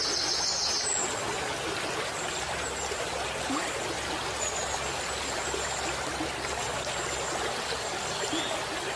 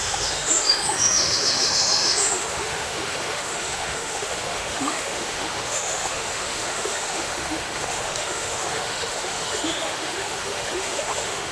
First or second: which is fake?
second